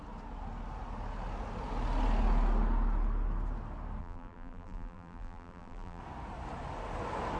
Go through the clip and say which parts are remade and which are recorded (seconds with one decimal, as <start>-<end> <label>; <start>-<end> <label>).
0.0-4.0 recorded; 4.0-6.0 remade; 6.0-7.4 recorded